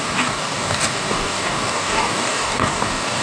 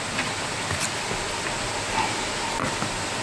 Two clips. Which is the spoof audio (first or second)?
first